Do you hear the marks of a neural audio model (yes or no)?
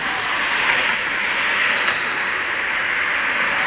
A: no